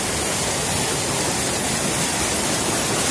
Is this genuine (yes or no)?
yes